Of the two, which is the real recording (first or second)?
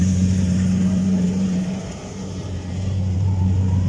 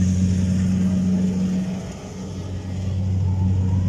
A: second